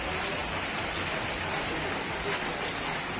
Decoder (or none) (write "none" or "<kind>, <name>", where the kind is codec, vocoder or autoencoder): none